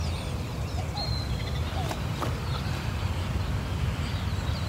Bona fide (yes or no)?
yes